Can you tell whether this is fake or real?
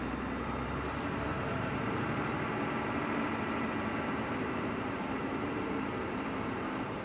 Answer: fake